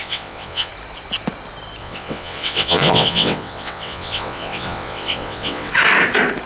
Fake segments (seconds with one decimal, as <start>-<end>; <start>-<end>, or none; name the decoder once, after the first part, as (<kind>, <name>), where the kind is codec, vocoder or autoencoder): 0.0-0.7 (vocoder, WaveNeXt); 1.8-5.7